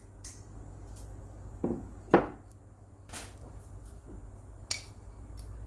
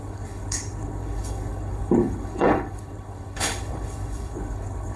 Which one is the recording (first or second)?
first